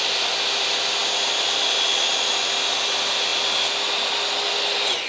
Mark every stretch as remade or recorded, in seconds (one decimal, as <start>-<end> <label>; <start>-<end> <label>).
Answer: 0.0-5.1 recorded